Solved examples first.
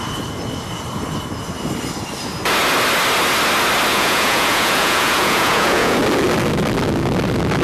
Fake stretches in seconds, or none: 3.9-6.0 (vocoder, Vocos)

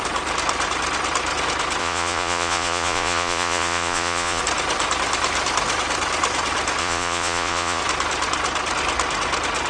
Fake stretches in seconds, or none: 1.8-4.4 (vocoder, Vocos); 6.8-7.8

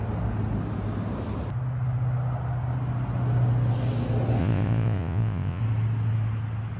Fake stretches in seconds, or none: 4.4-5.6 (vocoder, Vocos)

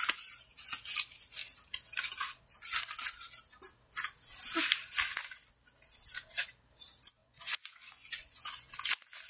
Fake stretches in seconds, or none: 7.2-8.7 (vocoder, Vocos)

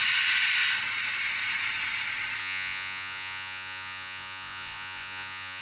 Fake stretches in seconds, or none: 2.4-5.6 (vocoder, Vocos)

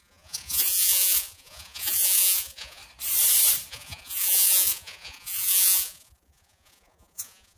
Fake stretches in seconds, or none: 0.0-2.8 (vocoder, Vocos); 3.7-7.6